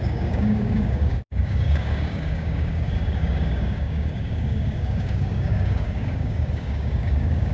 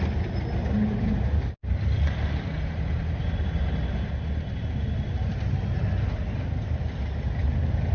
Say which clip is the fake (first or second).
first